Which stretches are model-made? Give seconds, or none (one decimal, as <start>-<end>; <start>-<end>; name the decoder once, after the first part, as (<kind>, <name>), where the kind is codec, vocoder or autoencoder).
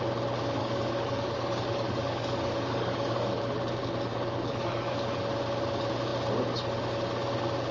0.6-3.4 (codec, DAC); 4.1-4.9